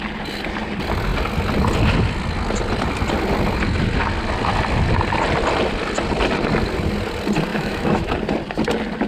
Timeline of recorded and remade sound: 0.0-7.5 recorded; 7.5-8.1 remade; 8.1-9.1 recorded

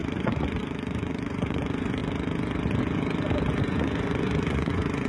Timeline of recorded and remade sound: 0.0-2.0 remade; 2.0-3.6 recorded; 3.6-5.1 remade

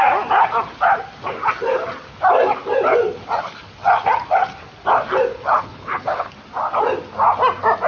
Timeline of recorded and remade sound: 0.0-5.3 recorded; 5.3-6.3 remade; 6.3-7.9 recorded

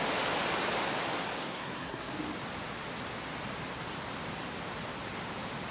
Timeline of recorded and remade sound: 0.0-1.4 recorded; 1.4-2.1 remade; 2.1-5.7 recorded

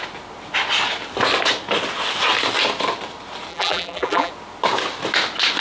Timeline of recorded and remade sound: 0.0-3.5 recorded; 3.5-4.3 remade; 4.3-5.6 recorded

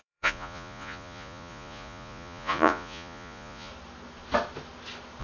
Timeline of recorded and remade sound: 0.0-3.7 remade; 3.7-5.2 recorded

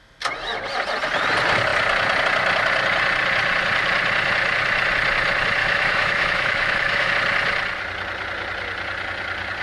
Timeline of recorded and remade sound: 0.0-5.6 recorded; 5.6-7.1 remade; 7.1-9.6 recorded